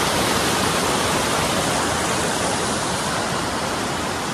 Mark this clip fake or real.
fake